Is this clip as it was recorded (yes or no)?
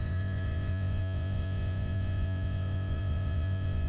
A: no